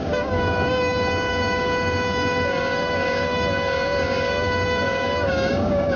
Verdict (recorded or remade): remade